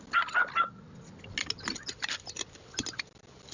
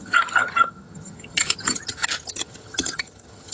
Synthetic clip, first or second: second